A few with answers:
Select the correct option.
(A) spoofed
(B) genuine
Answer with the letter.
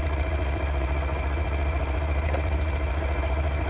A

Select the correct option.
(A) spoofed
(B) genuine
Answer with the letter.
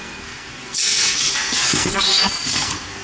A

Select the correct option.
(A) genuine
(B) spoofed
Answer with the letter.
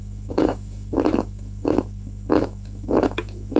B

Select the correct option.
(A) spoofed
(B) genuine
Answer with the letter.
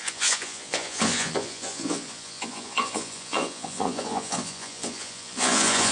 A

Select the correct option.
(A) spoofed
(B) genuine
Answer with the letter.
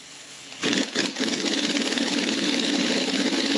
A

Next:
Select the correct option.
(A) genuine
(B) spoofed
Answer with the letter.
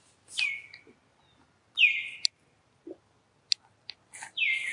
A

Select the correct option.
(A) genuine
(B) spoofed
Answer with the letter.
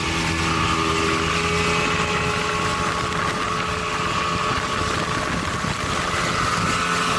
A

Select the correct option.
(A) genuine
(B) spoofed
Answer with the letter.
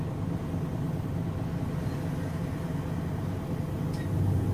A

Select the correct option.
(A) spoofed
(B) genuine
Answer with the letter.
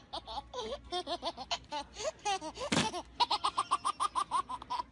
B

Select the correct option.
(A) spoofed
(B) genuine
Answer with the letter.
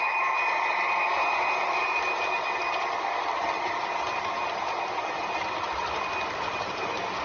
B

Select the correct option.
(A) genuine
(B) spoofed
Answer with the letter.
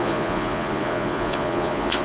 B